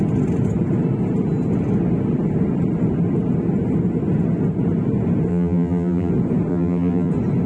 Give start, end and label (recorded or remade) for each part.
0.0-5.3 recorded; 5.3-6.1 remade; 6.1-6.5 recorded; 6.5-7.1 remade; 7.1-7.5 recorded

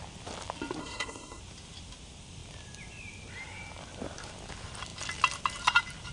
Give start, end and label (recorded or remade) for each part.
0.0-0.8 recorded; 0.8-1.4 remade; 1.4-6.1 recorded

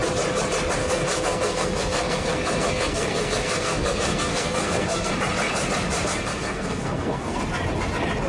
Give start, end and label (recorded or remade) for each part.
0.0-0.8 recorded; 0.8-5.1 remade; 5.1-6.1 recorded; 6.1-7.4 remade; 7.4-8.3 recorded

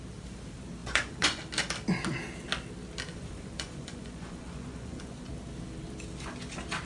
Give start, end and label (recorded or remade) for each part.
0.0-0.8 recorded; 0.8-1.4 remade; 1.4-3.1 recorded; 3.1-5.3 remade; 5.3-6.9 recorded